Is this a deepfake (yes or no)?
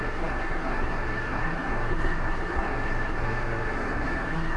yes